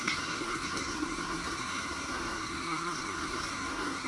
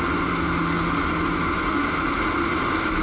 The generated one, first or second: first